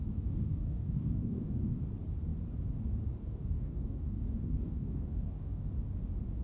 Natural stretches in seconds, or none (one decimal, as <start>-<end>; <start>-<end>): 1.8-3.2; 5.7-6.4